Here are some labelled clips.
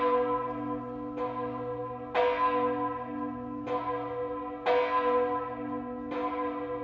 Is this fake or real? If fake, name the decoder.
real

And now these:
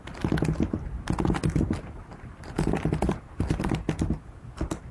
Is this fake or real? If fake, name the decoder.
real